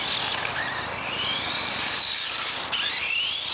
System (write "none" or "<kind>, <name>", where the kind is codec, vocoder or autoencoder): none